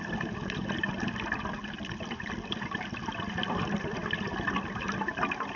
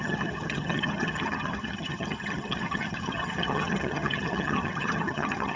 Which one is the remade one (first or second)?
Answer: second